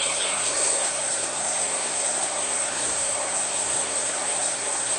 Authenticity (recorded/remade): remade